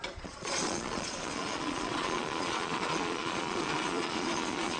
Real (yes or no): no